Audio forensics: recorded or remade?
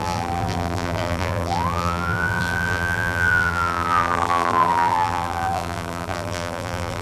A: remade